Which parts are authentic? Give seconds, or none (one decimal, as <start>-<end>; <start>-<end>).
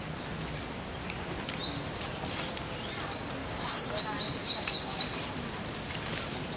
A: 0.0-3.4; 4.0-4.4; 5.0-6.6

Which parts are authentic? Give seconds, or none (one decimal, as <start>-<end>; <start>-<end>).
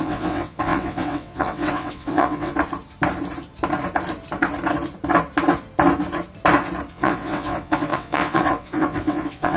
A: 2.5-6.9